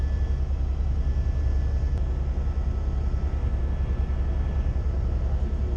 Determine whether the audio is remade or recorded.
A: recorded